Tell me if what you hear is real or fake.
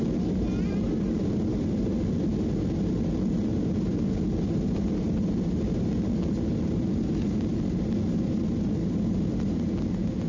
real